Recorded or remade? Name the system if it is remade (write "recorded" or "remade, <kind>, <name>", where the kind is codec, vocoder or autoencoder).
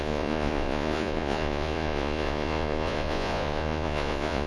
remade, vocoder, Vocos